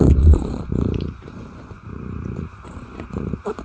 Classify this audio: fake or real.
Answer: fake